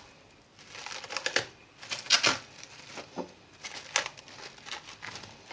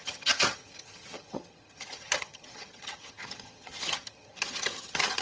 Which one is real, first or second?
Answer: first